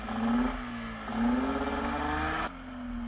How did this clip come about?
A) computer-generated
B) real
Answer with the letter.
B